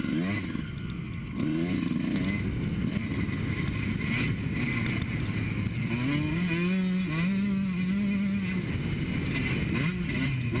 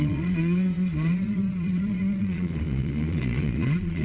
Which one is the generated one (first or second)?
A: second